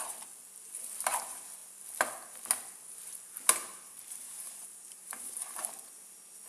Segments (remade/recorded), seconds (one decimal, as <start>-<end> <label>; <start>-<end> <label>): 0.0-3.6 recorded; 3.6-5.7 remade; 5.7-6.5 recorded